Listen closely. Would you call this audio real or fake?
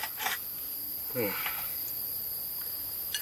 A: real